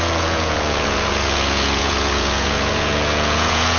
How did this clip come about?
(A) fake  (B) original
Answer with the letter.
A